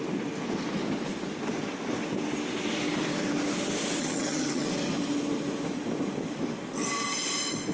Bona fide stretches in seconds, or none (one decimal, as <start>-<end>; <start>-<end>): 0.0-4.0; 4.7-7.7